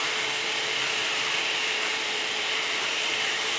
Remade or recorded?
remade